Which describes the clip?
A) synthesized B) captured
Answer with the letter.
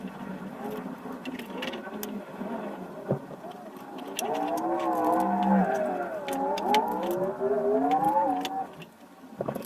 B